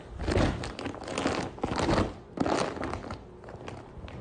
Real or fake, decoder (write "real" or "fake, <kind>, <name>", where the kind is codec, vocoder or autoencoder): real